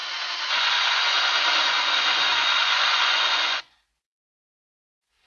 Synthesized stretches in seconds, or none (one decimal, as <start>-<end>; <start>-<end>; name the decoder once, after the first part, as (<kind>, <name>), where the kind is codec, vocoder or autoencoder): 0.5-5.3 (vocoder, Vocos)

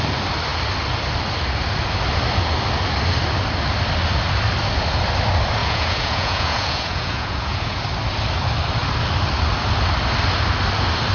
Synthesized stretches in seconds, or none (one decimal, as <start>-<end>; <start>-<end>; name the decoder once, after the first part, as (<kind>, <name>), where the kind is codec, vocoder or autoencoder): 5.6-7.8 (vocoder, Vocos)

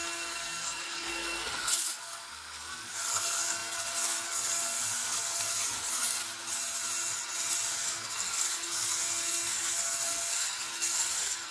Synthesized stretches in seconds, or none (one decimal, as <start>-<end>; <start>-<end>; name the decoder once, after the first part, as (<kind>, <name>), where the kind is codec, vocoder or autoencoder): 0.0-6.2 (codec, SNAC); 7.7-11.5

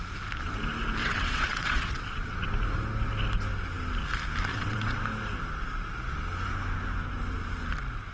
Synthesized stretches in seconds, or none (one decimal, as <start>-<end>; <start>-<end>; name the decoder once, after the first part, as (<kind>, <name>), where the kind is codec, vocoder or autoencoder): 1.0-2.5 (vocoder, WaveNeXt); 4.5-5.0

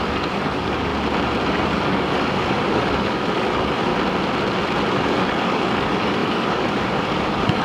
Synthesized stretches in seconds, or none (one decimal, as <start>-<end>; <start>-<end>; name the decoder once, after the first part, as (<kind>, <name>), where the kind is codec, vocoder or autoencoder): 0.0-0.9 (codec, DAC); 1.5-3.9; 4.9-7.6

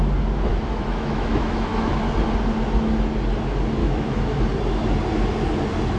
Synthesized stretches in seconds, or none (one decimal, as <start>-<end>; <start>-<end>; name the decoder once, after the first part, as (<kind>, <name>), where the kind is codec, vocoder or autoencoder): 0.5-2.0 (autoencoder, DAC-VAE); 3.8-4.4

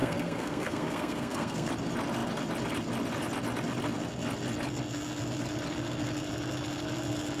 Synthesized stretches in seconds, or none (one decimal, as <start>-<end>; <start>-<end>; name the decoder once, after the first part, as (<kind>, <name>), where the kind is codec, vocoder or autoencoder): 0.0-1.7 (codec, SNAC)